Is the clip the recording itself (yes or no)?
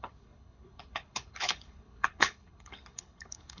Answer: no